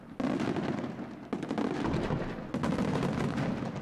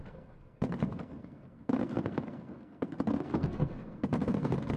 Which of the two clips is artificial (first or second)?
second